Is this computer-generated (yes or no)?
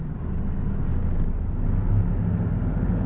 no